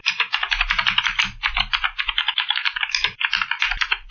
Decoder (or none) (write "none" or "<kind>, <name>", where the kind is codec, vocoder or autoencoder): vocoder, BigVGAN v2